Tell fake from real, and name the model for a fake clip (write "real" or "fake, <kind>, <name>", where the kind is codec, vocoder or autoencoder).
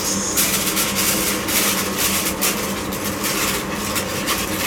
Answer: real